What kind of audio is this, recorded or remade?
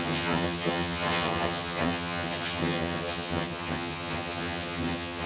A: remade